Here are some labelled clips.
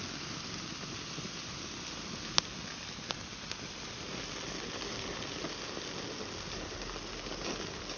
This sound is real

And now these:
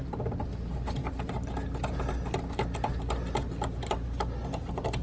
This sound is real